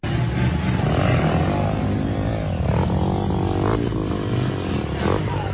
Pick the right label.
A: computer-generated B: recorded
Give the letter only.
B